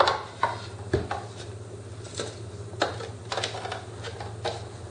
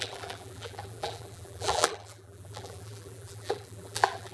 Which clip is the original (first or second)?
first